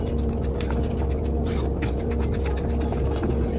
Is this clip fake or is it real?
real